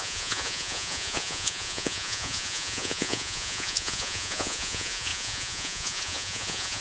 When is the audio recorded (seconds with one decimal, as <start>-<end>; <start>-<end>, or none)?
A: none